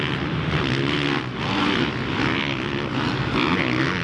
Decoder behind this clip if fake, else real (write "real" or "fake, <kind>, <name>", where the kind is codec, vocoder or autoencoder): real